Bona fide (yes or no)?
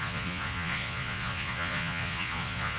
no